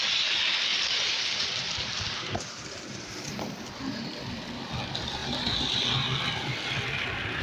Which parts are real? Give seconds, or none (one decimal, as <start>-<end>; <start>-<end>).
0.0-0.7; 3.4-7.4